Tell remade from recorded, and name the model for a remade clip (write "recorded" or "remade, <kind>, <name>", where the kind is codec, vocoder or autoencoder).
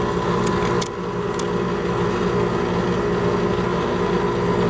recorded